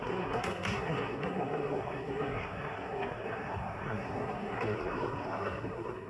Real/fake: fake